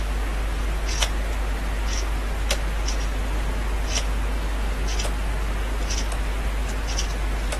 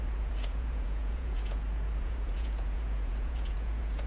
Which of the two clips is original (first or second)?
first